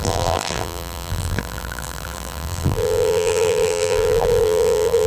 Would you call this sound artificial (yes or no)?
yes